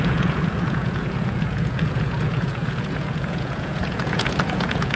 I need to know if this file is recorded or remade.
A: remade